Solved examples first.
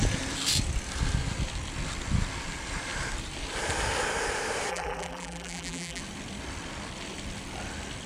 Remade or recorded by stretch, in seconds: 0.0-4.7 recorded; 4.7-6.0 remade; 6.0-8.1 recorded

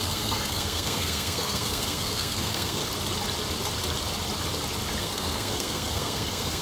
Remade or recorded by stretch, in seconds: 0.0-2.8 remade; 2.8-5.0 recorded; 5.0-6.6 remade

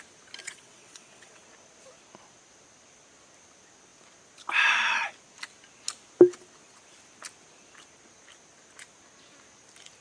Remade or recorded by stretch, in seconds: 0.0-0.4 recorded; 0.4-1.4 remade; 1.4-10.0 recorded

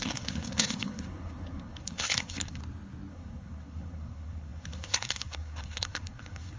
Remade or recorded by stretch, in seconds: 0.0-2.6 remade; 2.6-3.1 recorded; 3.1-6.6 remade

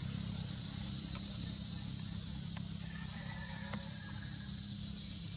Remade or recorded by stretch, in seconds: 0.0-1.7 remade; 1.7-5.4 recorded